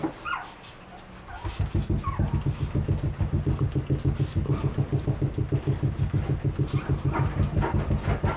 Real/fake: real